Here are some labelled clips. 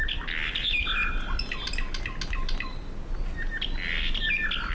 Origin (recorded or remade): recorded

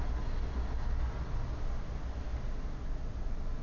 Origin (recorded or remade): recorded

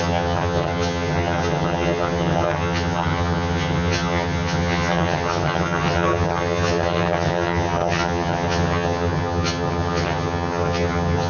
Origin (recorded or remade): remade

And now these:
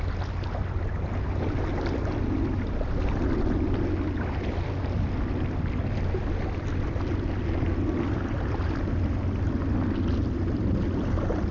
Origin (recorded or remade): recorded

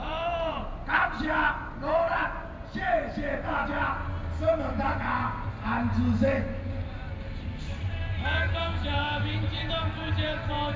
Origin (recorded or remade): recorded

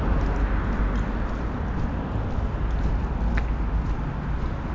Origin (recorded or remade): recorded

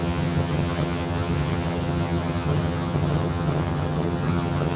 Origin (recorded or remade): remade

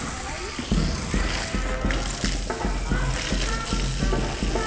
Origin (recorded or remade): recorded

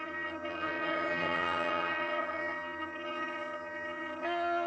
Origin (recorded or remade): remade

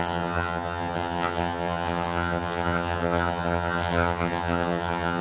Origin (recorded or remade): remade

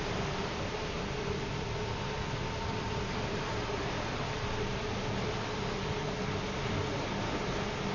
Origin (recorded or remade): recorded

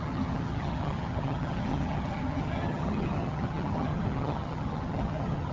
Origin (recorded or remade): remade